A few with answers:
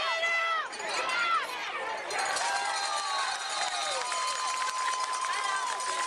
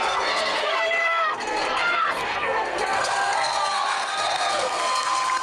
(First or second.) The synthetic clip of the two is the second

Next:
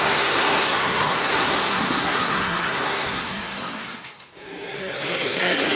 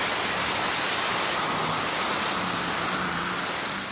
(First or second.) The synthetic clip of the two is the first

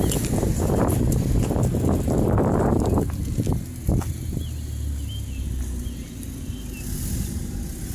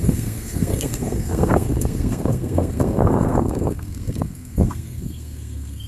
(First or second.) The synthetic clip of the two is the second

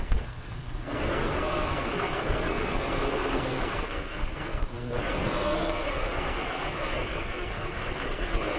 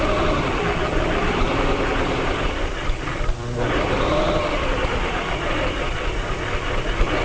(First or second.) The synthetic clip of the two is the first